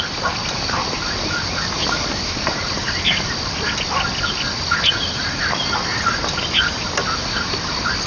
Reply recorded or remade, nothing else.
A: recorded